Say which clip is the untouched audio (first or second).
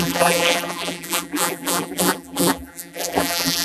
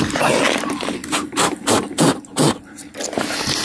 second